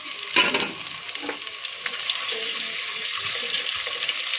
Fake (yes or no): no